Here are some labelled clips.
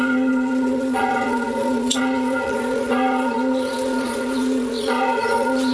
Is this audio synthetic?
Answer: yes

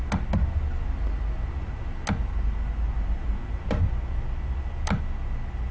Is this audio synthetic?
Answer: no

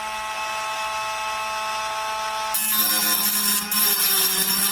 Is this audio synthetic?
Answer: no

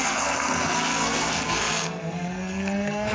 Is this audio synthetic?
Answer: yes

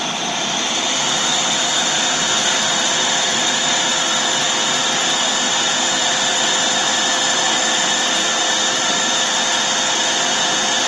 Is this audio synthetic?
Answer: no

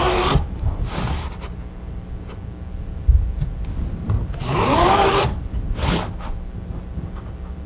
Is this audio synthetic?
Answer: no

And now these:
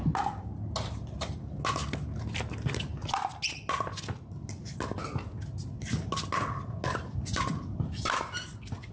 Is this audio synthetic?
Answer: no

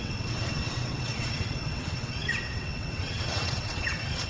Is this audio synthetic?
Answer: yes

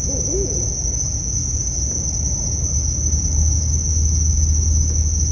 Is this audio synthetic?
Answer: no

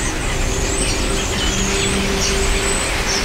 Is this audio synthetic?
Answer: no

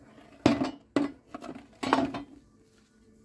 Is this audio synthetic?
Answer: no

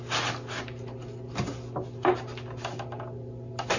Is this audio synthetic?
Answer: no